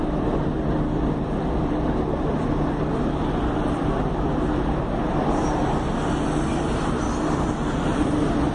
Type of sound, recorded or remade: remade